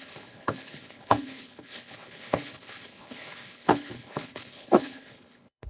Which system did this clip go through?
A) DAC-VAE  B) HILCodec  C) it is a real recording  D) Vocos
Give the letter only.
B